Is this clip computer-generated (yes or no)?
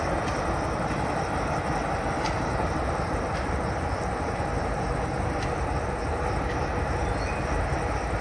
no